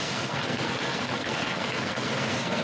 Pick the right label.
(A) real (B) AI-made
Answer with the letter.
B